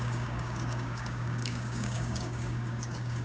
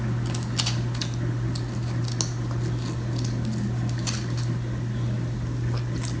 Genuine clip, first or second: second